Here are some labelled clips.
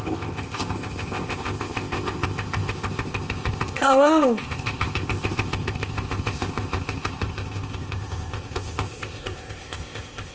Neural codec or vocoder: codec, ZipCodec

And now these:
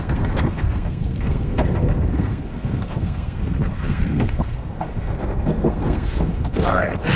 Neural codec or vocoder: codec, SNAC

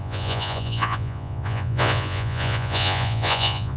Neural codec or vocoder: vocoder, Vocos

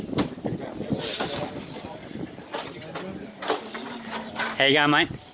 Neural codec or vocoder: none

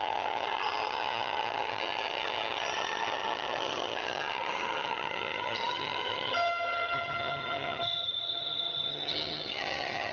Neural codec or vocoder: vocoder, HiFi-GAN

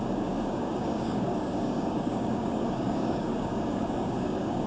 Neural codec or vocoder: codec, DAC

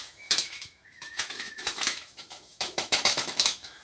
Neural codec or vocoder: autoencoder, DAC-VAE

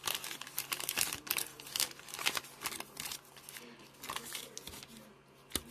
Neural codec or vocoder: none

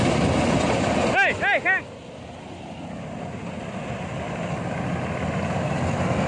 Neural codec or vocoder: none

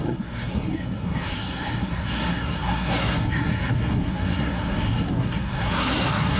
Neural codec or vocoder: codec, SNAC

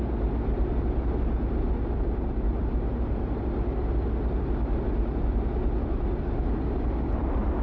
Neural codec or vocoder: none